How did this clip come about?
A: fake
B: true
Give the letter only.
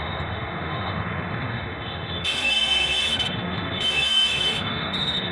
A